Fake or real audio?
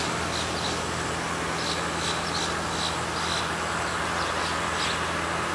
real